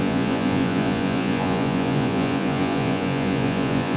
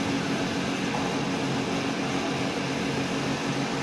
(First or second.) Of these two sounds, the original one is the second